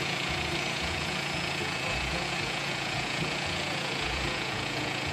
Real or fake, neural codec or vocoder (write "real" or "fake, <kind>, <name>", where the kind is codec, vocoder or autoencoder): fake, vocoder, Vocos